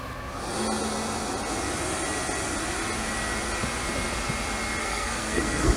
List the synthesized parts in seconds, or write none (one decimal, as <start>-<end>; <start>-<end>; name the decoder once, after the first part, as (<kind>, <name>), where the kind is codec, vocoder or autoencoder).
4.8-5.8 (codec, SNAC)

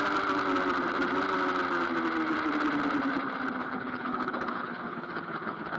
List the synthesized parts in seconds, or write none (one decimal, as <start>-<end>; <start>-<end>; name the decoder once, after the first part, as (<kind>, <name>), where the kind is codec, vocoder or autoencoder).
3.6-5.8 (codec, HILCodec)

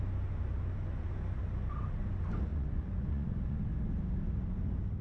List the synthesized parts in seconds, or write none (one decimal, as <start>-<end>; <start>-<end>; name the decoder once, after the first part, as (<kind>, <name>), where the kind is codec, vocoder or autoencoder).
2.5-3.6 (vocoder, Vocos)